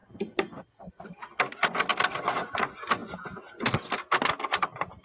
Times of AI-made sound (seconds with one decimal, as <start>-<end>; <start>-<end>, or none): 0.0-1.1